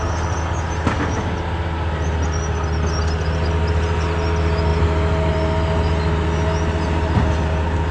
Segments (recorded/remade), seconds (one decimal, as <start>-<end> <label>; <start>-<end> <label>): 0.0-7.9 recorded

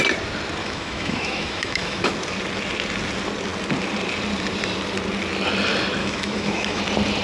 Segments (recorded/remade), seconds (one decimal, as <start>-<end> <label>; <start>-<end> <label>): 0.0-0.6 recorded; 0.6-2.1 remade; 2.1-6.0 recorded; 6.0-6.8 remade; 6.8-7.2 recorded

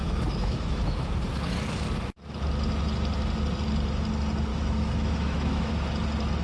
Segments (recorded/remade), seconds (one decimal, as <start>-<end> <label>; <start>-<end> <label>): 0.0-1.2 remade; 1.2-4.5 recorded; 4.5-5.7 remade; 5.7-6.4 recorded

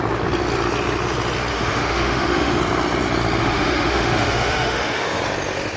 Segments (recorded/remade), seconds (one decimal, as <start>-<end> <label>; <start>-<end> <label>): 0.0-1.5 recorded; 1.5-2.6 remade; 2.6-3.4 recorded; 3.4-5.2 remade; 5.2-5.8 recorded

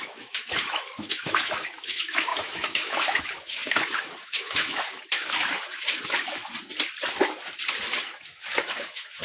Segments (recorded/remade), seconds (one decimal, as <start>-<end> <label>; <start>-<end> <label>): 0.0-6.4 remade; 6.4-8.0 recorded; 8.0-9.2 remade

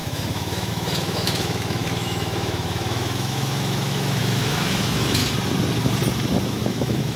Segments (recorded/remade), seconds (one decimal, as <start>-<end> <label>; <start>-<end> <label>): 0.0-5.2 remade; 5.2-6.4 recorded; 6.4-7.2 remade

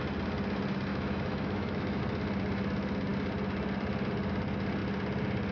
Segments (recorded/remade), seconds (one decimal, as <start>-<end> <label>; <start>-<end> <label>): 0.0-0.9 recorded; 0.9-2.0 remade; 2.0-5.5 recorded

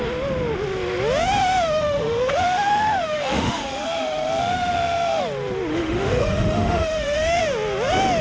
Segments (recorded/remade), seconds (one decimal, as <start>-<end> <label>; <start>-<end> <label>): 0.0-1.4 recorded; 1.4-5.2 remade; 5.2-5.7 recorded; 5.7-7.4 remade; 7.4-8.2 recorded